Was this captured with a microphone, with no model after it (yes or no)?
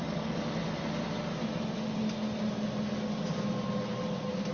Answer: yes